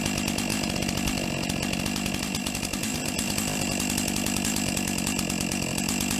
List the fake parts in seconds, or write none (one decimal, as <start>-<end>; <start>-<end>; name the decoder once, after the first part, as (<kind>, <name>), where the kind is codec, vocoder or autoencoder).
0.0-6.2 (vocoder, BigVGAN v2)